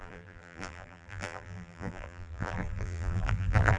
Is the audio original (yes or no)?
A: no